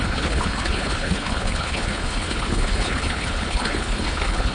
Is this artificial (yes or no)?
yes